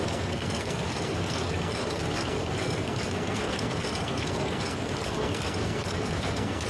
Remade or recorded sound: remade